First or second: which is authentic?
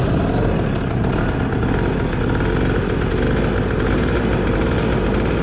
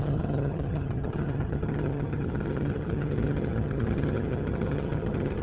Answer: first